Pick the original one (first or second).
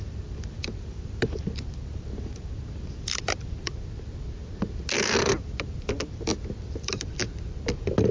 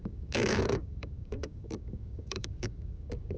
first